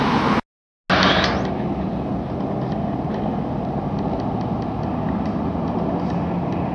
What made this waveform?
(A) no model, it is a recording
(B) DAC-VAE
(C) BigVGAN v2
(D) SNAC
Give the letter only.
A